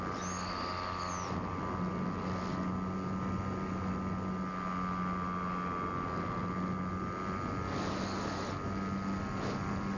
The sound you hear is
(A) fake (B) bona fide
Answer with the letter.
B